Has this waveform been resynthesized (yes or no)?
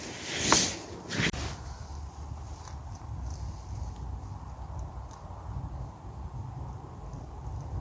no